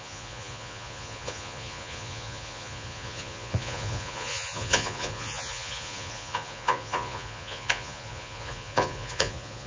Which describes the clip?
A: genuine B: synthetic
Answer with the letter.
B